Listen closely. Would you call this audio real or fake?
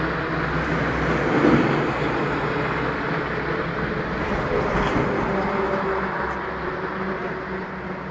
real